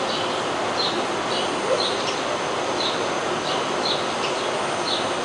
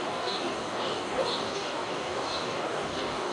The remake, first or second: second